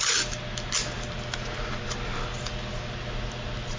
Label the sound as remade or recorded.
recorded